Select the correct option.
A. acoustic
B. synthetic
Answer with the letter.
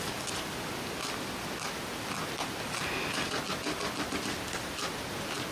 A